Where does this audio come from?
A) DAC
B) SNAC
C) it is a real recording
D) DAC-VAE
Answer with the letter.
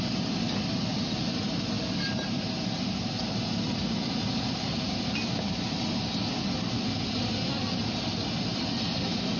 C